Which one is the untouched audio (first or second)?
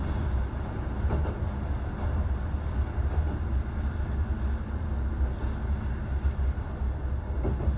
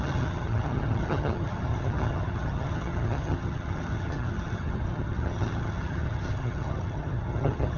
first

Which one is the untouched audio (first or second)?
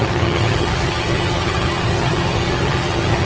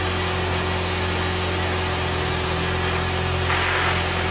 second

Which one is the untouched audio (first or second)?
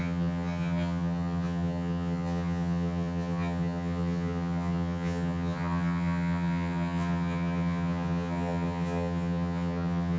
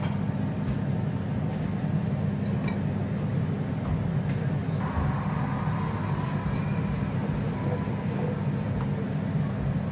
second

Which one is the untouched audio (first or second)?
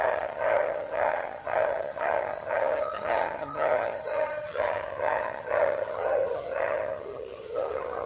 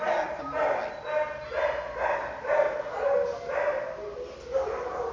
second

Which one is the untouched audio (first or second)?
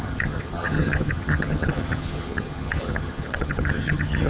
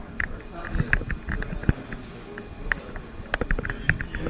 second